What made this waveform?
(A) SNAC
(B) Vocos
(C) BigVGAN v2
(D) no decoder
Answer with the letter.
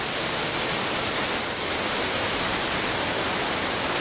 D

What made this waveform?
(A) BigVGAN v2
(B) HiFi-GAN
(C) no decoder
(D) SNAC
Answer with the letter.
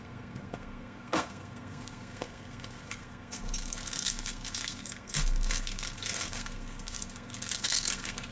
D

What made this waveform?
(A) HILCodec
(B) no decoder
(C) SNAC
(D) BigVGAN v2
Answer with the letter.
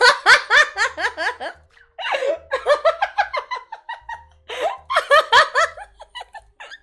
B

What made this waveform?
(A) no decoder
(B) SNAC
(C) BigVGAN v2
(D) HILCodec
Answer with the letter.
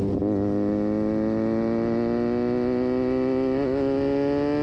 A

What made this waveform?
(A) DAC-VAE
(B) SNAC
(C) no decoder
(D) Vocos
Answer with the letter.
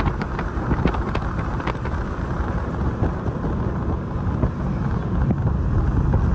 C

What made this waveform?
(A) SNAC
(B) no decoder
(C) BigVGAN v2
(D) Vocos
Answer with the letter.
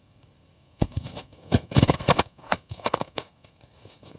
A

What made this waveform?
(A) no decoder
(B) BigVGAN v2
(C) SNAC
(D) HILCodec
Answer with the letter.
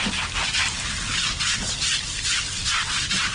A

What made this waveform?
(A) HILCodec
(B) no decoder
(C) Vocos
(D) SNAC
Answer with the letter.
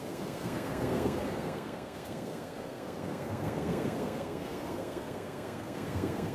D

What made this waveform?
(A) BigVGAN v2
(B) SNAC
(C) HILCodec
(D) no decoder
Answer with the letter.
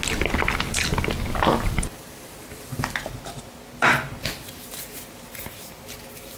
D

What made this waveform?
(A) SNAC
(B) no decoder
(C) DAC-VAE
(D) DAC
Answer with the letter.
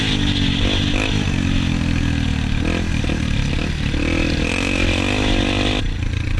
B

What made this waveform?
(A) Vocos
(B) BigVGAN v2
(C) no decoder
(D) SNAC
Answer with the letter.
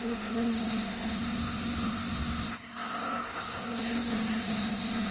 D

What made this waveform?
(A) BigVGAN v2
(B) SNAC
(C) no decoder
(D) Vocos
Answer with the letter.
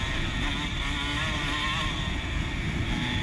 C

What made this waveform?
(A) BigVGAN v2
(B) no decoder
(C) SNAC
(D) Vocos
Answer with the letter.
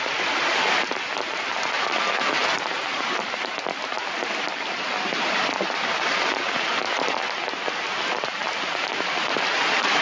B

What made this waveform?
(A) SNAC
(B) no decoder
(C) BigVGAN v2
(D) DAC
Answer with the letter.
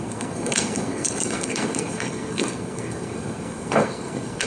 A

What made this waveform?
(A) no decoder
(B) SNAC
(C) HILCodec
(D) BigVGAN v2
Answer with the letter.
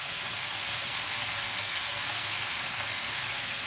B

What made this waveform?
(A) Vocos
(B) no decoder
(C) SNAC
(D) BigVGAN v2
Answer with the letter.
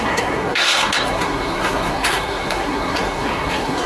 C